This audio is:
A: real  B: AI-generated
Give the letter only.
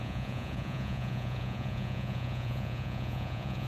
B